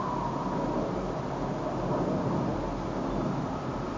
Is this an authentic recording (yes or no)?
yes